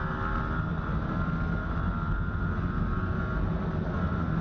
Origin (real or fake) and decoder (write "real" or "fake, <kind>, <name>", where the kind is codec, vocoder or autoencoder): real